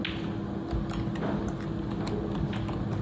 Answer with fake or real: real